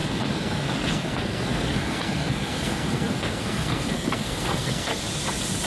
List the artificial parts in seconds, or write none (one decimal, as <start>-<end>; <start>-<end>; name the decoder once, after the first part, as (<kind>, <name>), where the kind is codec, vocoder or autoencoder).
0.0-4.9 (codec, SNAC)